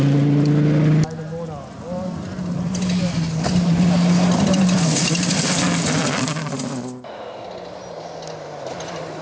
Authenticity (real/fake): real